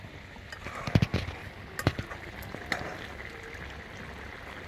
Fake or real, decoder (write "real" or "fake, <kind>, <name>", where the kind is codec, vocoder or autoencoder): real